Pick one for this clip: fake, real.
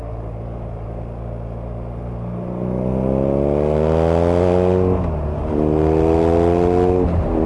real